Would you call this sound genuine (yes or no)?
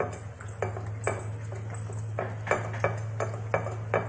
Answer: yes